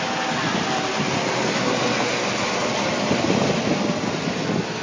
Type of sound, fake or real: real